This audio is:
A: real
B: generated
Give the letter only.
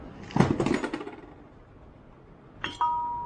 A